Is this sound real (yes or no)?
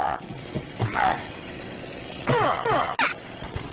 no